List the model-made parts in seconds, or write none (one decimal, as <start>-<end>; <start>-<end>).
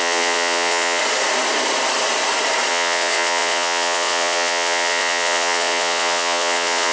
0.0-1.0; 2.7-6.9